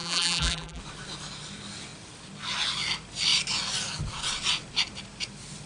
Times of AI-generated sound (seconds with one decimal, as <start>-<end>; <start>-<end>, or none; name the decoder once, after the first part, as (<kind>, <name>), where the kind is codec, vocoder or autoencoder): 0.0-0.8 (vocoder, BigVGAN v2)